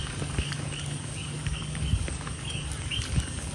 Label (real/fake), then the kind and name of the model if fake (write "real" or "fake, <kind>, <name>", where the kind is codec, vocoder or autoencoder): fake, codec, DAC